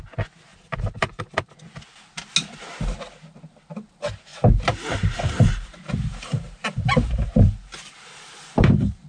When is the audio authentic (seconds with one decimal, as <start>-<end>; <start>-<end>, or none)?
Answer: 0.0-0.5; 1.5-4.3